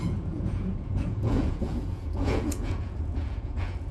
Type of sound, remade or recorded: remade